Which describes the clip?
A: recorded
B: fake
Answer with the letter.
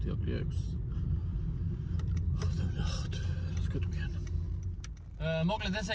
A